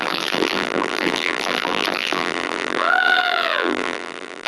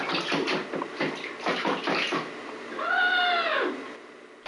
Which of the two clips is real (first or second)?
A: second